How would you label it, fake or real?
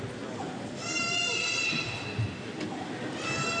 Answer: real